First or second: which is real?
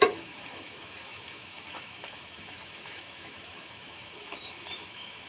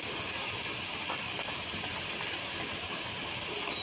second